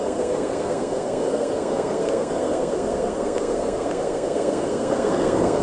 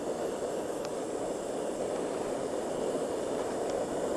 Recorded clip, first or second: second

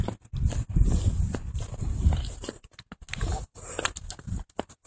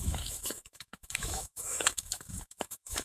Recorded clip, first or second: first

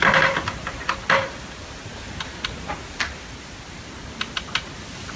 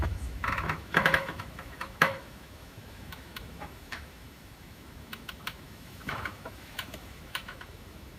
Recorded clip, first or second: first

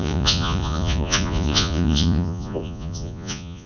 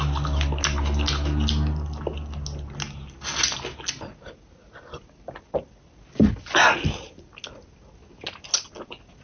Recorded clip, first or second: second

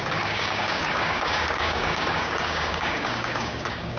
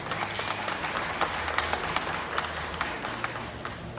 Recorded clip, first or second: second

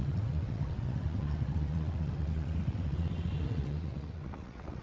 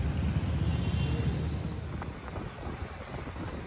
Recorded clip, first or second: second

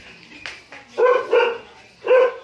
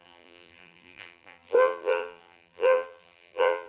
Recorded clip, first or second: first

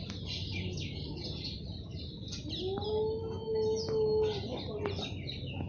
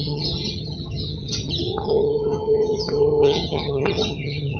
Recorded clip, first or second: first